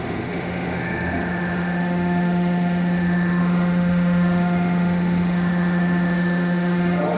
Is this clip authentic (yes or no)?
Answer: no